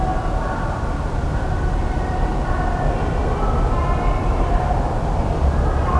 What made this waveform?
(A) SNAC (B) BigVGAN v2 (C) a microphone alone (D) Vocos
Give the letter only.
C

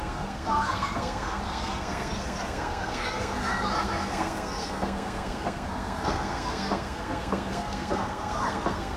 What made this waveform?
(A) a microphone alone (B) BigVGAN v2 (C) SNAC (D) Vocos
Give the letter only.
C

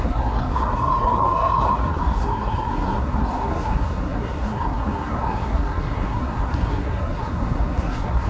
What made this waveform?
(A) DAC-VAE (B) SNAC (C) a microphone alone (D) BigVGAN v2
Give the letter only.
B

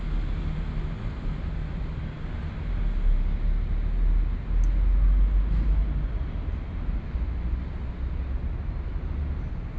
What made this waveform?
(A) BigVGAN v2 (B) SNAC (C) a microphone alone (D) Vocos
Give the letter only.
C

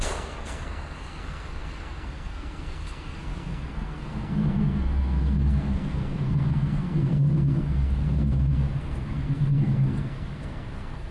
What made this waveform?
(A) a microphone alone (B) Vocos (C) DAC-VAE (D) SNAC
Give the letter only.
D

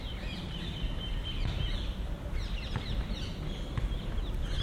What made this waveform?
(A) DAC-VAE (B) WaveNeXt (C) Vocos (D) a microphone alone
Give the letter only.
D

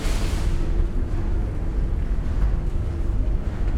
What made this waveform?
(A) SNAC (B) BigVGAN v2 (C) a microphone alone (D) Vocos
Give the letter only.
C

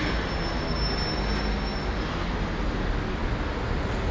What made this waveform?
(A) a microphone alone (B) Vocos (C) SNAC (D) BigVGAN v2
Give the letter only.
A